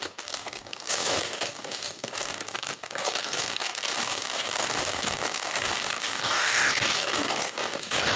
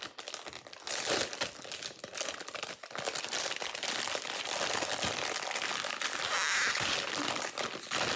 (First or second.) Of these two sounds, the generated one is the first